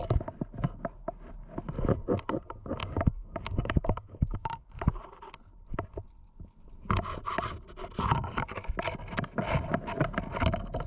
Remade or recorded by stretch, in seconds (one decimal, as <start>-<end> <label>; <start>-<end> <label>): 0.0-2.8 recorded; 2.8-4.8 remade; 4.8-10.9 recorded